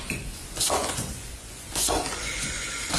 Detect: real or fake fake